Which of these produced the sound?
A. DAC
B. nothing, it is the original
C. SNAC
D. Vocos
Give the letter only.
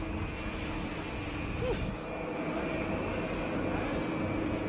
B